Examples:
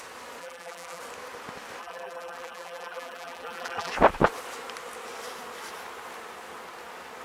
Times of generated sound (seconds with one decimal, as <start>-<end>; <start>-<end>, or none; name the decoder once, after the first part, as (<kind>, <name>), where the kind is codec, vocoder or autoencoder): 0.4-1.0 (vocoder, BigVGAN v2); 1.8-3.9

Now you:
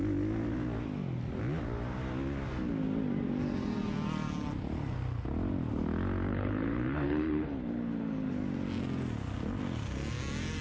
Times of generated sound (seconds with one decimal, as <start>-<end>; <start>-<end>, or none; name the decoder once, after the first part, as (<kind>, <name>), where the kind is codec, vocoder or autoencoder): 6.3-8.3 (codec, HILCodec)

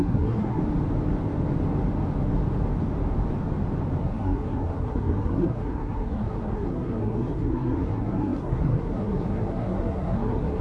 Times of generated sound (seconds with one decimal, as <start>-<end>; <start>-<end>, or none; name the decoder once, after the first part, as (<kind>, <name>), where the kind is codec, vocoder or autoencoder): 0.0-0.6 (codec, SNAC); 4.0-10.6

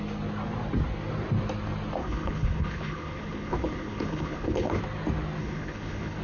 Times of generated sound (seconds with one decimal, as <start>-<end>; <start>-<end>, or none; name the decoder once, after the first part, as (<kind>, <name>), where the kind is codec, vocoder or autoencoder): 2.0-4.8 (codec, HILCodec); 5.4-6.2

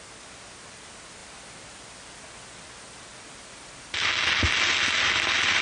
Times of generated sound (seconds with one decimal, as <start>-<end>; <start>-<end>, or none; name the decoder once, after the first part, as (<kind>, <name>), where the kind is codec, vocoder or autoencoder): none

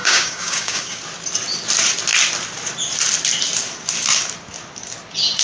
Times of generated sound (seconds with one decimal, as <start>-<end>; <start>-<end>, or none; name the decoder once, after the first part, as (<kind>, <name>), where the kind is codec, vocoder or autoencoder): 0.0-1.0 (codec, DAC)

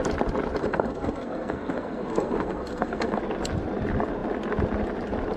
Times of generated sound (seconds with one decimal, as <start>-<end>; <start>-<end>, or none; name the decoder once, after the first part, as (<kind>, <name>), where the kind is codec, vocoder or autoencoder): 0.6-3.2 (codec, SNAC)

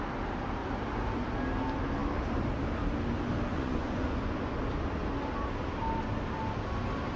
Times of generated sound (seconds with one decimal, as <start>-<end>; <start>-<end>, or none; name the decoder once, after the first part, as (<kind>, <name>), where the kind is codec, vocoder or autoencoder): 3.5-4.6 (vocoder, Vocos)